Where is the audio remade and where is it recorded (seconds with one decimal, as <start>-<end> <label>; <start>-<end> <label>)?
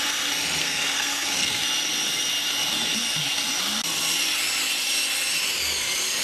0.0-0.6 recorded; 0.6-1.6 remade; 1.6-6.2 recorded